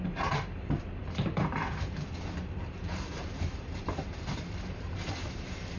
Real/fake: fake